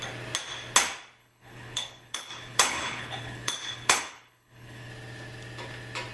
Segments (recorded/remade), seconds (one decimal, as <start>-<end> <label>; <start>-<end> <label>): 0.0-1.2 recorded; 1.2-4.9 remade; 4.9-6.1 recorded